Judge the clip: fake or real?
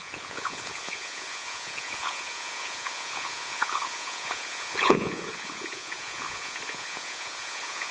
fake